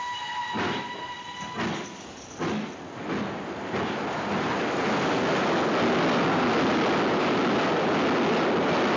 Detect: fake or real real